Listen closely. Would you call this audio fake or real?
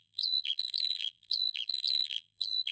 fake